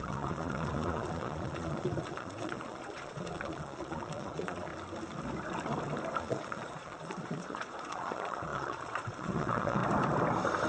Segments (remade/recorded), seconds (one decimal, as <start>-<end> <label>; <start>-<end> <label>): 0.0-4.7 remade; 4.7-6.2 recorded; 6.2-9.8 remade; 9.8-10.7 recorded